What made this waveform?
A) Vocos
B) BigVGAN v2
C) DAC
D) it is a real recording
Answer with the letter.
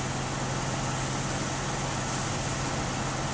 D